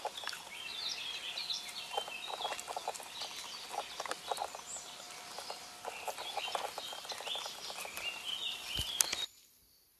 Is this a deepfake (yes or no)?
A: no